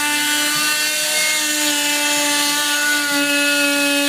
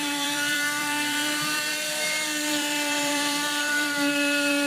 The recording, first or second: first